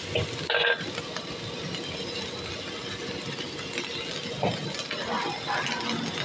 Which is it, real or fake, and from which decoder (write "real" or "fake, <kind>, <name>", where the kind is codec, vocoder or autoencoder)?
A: real